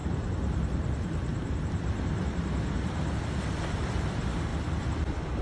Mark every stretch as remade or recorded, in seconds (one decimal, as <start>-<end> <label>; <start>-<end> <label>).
0.0-4.5 recorded; 4.5-5.0 remade; 5.0-5.4 recorded